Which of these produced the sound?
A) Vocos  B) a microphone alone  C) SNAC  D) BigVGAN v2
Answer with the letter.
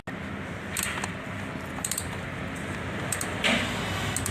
B